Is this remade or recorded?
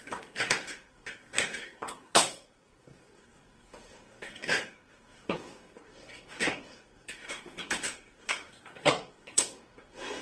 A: remade